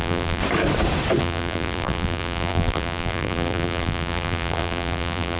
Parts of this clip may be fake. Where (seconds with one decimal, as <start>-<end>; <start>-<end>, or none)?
0.0-0.4; 1.2-5.4